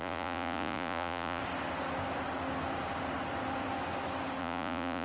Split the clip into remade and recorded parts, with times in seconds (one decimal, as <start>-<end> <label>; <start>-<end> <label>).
0.0-1.4 remade; 1.4-4.4 recorded; 4.4-5.0 remade